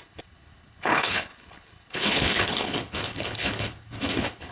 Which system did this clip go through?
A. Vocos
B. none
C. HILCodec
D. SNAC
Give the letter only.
C